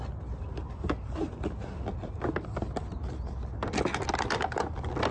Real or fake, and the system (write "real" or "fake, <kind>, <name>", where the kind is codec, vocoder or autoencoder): real